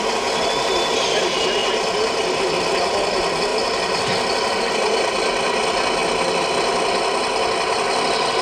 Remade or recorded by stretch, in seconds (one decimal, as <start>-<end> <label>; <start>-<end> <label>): 0.0-1.6 recorded; 1.6-2.7 remade; 2.7-3.5 recorded; 3.5-4.6 remade; 4.6-8.4 recorded